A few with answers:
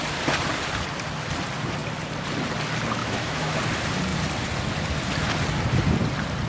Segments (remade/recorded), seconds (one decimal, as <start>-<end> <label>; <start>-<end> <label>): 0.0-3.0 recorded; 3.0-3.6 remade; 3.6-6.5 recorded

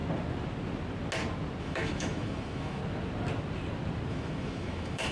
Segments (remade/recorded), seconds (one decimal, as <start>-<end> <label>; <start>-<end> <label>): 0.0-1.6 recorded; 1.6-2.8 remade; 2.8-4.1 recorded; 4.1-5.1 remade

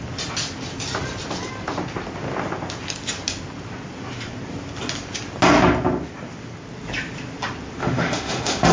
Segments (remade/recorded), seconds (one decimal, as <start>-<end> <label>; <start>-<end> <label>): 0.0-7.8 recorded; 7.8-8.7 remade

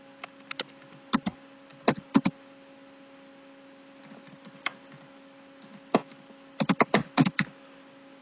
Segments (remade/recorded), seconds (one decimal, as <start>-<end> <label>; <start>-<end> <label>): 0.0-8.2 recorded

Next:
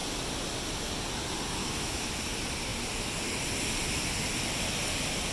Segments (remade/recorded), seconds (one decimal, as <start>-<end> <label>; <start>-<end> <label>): 0.0-1.6 recorded; 1.6-2.1 remade; 2.1-5.3 recorded